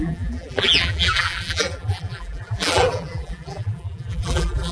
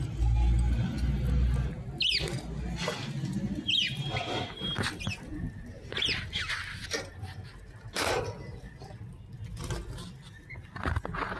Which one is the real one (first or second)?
second